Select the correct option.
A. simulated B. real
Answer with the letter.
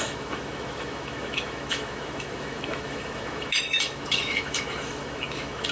A